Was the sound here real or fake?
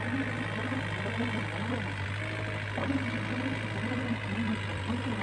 real